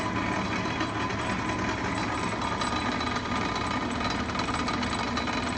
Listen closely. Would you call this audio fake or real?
real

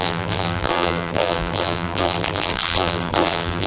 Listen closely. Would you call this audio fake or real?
fake